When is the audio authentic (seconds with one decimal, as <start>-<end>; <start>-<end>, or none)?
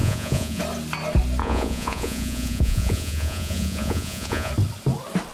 0.6-1.4; 4.5-5.3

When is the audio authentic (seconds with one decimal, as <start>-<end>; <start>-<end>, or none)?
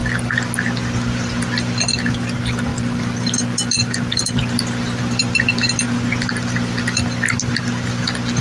0.0-8.4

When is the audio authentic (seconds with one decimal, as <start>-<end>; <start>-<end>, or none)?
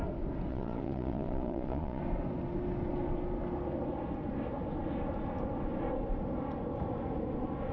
0.0-0.5; 2.0-7.7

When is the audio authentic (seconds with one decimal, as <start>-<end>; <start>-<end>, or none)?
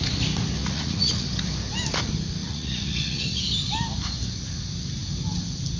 0.0-0.6; 1.3-2.4; 3.4-5.8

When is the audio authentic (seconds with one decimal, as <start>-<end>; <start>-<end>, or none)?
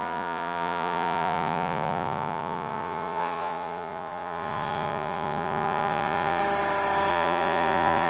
6.4-7.1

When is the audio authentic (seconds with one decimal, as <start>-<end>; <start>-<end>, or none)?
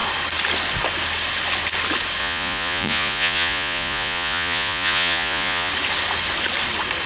0.0-2.2; 5.7-7.1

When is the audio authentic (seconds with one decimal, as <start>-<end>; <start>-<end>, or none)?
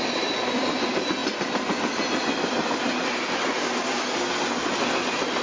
0.0-5.4